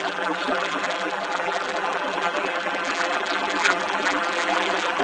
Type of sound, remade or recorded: remade